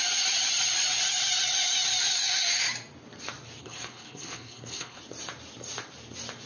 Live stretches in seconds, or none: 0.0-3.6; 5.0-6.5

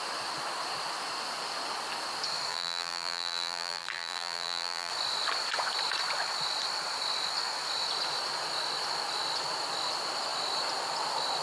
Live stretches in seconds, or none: 0.0-2.5; 4.9-11.4

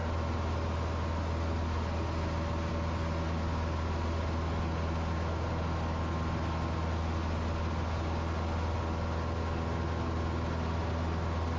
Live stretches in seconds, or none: 0.0-11.6

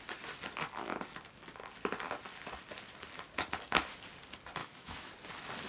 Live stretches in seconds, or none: 0.0-4.6; 5.1-5.7

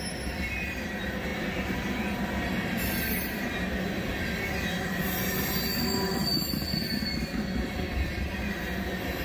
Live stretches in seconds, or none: 0.0-9.2

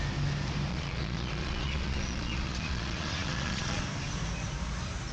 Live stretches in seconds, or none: 0.0-0.7; 3.8-5.1